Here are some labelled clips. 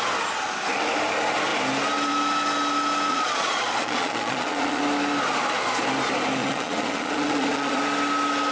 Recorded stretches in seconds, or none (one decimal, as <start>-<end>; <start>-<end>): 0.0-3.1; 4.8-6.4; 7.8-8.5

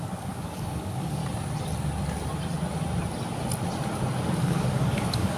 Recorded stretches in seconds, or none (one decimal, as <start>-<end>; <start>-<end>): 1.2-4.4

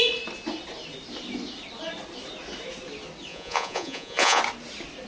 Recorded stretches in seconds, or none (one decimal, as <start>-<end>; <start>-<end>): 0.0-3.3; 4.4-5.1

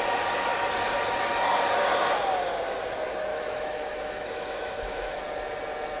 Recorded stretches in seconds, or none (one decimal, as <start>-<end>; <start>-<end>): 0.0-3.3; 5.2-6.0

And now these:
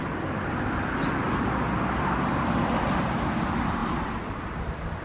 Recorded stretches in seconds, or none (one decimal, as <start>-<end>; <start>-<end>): 0.0-5.0

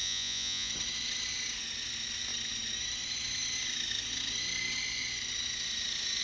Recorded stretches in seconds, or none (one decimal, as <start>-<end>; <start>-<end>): 0.7-6.2